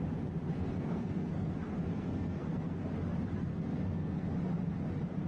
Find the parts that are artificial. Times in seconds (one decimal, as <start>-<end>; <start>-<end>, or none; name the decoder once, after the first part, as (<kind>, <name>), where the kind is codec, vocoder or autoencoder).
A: 0.5-2.8 (codec, SNAC); 3.5-4.3